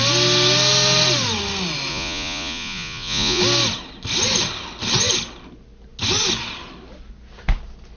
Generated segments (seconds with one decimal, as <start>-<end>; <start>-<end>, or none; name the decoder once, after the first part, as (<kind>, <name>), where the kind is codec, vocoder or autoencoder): 1.9-3.4 (vocoder, Vocos)